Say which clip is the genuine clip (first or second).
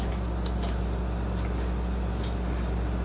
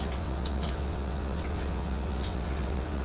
first